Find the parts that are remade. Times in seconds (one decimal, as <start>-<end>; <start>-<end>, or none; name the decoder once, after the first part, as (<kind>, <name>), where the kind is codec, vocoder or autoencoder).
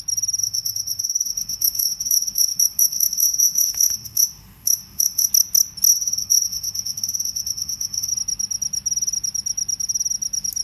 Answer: 0.4-5.3 (autoencoder, DAC-VAE); 5.9-8.1